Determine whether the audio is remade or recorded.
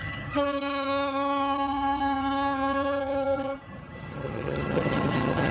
remade